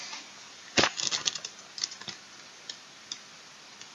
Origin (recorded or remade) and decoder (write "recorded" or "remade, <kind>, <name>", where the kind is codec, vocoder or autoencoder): recorded